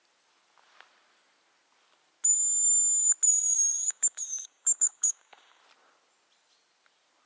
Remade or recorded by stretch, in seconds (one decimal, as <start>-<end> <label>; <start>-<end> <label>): 0.0-3.7 recorded; 3.7-5.6 remade; 5.6-7.3 recorded